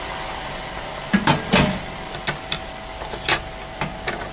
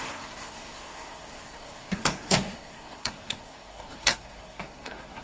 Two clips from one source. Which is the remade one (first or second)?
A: second